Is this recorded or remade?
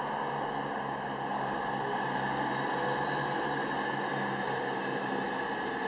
recorded